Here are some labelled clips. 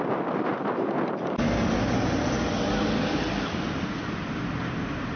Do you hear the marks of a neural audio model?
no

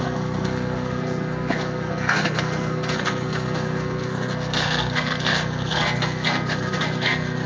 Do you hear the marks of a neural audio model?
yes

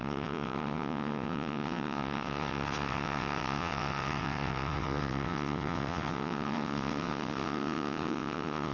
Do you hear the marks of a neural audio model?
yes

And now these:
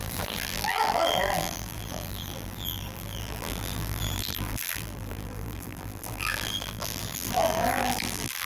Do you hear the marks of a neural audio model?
yes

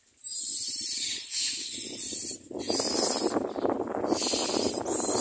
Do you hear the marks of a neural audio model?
no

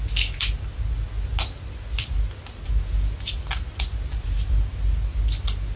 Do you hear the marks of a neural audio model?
no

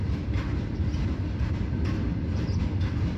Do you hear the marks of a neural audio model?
no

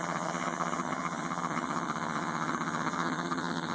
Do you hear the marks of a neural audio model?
yes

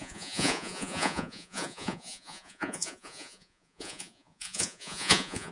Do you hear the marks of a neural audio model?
yes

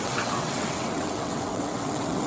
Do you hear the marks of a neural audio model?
yes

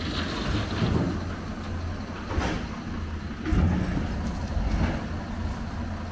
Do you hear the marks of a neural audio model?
no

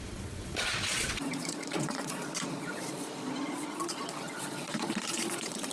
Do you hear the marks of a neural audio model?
yes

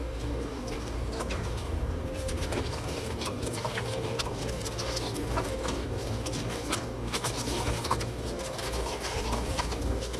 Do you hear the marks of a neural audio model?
yes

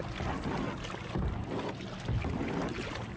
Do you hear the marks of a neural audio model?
no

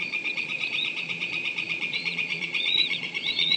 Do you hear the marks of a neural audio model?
yes